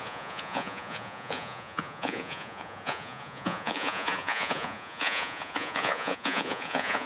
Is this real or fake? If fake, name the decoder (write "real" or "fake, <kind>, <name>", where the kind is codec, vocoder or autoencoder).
fake, vocoder, Vocos